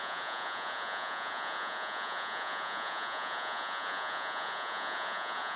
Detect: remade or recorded remade